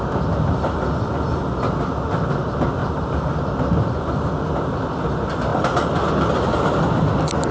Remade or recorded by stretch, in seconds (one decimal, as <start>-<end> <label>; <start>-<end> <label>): 0.0-2.8 recorded; 2.8-3.4 remade; 3.4-7.5 recorded